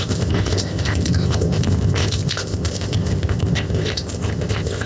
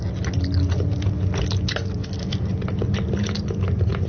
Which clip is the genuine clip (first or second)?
second